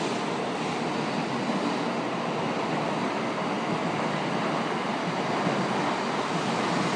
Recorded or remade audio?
recorded